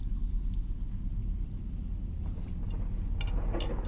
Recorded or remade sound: recorded